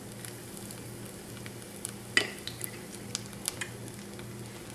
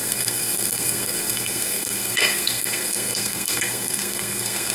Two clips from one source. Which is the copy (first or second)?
second